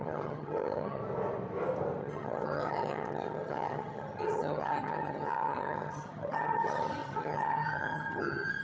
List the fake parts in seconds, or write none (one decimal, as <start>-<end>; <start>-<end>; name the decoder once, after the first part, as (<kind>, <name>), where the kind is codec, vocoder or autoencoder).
0.0-1.0 (vocoder, HiFi-GAN); 2.0-8.6